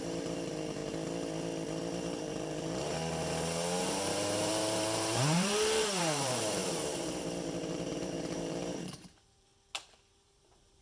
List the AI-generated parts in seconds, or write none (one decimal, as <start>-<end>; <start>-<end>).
0.0-0.8; 2.2-3.0; 3.8-9.5; 10.1-10.8